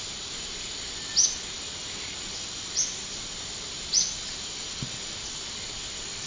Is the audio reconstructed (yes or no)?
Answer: no